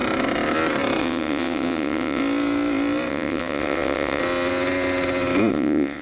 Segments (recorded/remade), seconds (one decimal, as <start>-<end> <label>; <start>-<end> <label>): 0.0-1.0 recorded; 1.0-2.2 remade; 2.2-3.1 recorded; 3.1-4.2 remade; 4.2-5.5 recorded; 5.5-6.0 remade